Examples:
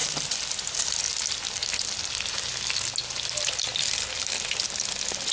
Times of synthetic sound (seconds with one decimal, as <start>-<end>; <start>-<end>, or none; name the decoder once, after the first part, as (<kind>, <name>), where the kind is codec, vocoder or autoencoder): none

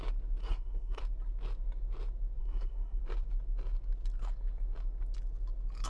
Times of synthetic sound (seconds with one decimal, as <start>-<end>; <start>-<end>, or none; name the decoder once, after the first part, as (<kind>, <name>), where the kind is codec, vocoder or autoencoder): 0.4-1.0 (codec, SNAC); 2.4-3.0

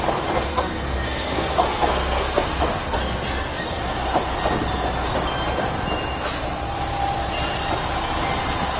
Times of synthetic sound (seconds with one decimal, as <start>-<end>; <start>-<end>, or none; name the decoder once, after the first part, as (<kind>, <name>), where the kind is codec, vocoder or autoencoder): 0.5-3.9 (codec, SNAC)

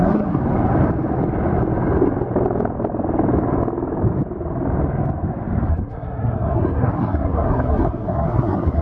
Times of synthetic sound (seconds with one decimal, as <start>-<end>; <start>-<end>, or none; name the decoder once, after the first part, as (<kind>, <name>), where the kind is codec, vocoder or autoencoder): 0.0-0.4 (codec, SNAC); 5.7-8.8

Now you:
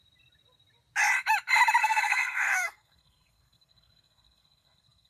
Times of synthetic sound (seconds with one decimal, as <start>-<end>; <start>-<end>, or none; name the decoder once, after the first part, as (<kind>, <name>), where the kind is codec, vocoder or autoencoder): 1.8-5.1 (codec, SNAC)

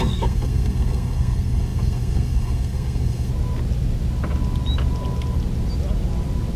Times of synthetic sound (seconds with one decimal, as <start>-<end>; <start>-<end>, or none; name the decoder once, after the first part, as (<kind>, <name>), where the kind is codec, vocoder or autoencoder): 0.0-3.3 (codec, SNAC)

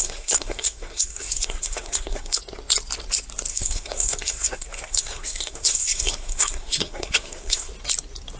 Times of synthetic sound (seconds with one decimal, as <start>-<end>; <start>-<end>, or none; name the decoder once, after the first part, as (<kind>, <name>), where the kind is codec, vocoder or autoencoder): 0.0-2.4 (codec, SNAC); 3.5-7.7